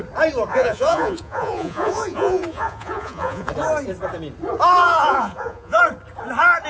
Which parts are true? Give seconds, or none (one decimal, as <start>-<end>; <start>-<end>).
0.0-0.5; 3.5-4.8; 5.8-6.7